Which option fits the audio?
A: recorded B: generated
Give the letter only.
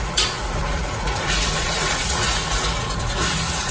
B